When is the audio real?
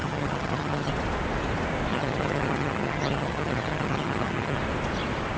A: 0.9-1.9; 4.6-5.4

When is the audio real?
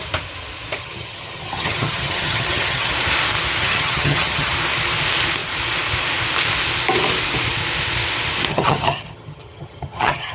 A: 0.0-0.8; 2.9-3.6; 4.5-8.5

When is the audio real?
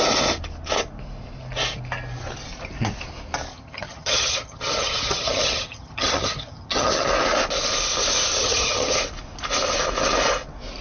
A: 0.0-3.5; 7.1-8.4; 9.0-10.8